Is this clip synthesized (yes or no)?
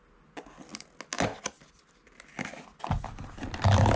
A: no